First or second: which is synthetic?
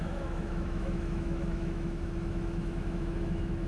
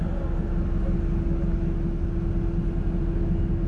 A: first